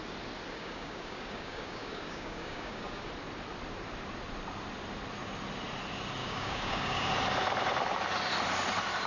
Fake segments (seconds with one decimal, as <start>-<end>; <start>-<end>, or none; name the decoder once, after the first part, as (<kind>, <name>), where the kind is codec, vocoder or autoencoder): 0.5-3.1 (codec, DAC); 6.2-7.1